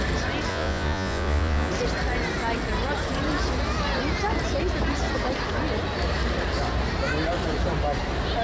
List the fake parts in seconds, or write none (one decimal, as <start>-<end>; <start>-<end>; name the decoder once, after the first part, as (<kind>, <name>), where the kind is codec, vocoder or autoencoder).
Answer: 0.5-1.7 (vocoder, Vocos)